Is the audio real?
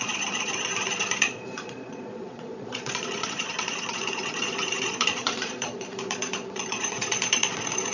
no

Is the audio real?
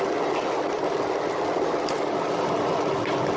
yes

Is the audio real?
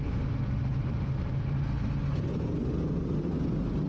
yes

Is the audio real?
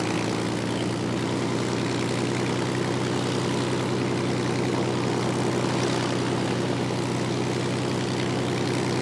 yes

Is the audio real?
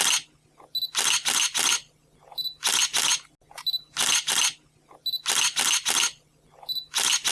yes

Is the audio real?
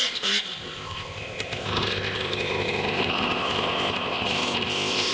no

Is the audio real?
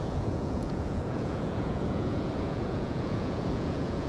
no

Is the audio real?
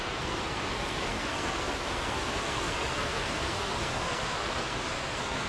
no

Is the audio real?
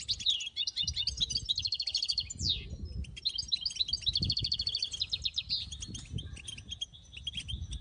yes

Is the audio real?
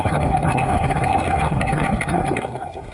no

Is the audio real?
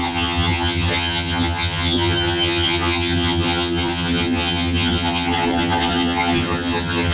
no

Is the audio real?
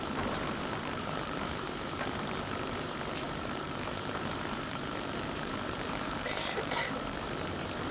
no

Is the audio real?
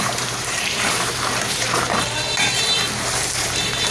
no